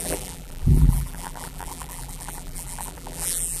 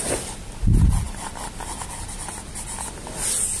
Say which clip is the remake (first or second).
first